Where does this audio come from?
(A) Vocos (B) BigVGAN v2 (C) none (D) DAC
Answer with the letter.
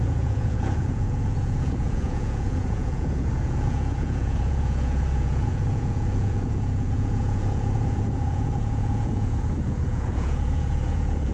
A